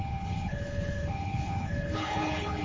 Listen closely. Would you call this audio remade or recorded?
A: remade